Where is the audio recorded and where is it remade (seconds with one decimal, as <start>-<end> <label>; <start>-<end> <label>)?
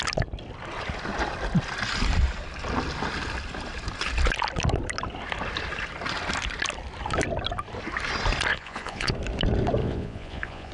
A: 0.0-8.5 recorded; 8.5-9.1 remade; 9.1-9.8 recorded; 9.8-10.7 remade